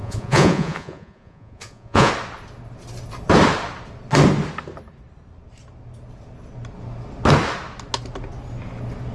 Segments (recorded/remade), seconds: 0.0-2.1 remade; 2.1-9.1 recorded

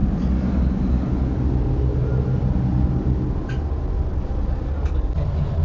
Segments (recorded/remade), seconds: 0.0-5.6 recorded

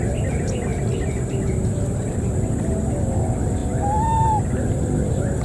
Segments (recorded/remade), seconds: 0.0-5.4 recorded